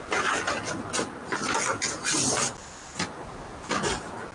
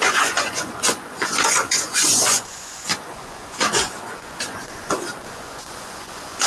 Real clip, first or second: first